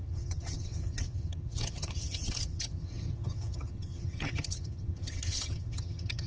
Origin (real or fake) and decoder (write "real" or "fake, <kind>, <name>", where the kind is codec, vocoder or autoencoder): fake, vocoder, HiFi-GAN